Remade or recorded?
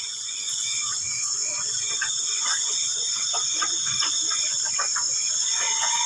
remade